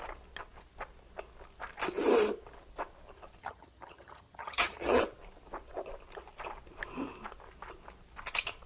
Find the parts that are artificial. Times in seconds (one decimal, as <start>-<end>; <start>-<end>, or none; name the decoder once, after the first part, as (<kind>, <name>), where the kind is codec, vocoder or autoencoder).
3.4-5.0 (vocoder, HiFi-GAN)